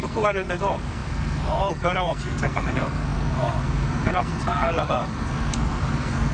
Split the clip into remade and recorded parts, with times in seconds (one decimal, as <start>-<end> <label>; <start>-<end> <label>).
0.0-6.3 remade